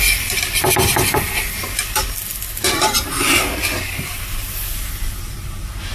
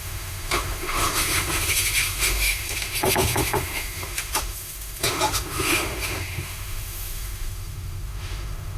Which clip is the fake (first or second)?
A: second